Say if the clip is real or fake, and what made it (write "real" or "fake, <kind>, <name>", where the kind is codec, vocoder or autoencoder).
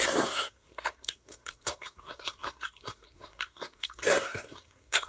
fake, codec, SNAC